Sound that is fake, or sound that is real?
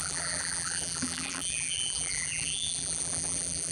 fake